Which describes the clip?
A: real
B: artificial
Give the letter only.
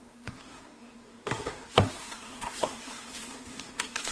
B